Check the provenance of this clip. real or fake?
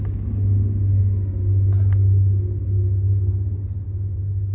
real